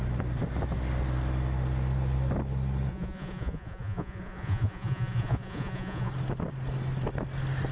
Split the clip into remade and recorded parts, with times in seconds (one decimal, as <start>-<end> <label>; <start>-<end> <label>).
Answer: 0.0-2.9 recorded; 2.9-6.1 remade; 6.1-7.7 recorded